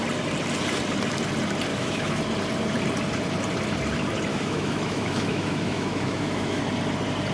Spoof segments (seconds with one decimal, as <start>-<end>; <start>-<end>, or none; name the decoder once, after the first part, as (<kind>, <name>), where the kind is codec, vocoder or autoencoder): 1.7-2.2 (autoencoder, DAC-VAE); 4.3-6.6